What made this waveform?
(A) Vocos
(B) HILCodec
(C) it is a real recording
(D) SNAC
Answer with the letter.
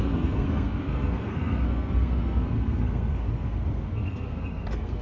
D